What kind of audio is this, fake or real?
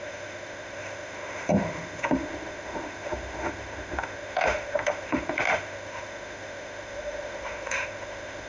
fake